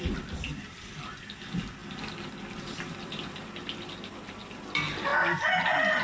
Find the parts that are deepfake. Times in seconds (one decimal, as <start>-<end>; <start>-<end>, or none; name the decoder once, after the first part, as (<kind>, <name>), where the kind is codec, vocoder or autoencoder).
none